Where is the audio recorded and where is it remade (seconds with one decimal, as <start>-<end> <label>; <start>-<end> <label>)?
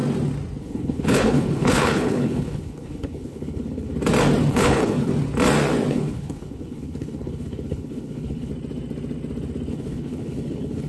0.0-0.6 recorded; 0.6-3.9 remade; 3.9-4.5 recorded; 4.5-5.1 remade; 5.1-5.9 recorded; 5.9-8.5 remade; 8.5-9.7 recorded; 9.7-10.9 remade